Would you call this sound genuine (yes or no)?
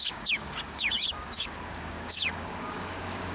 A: no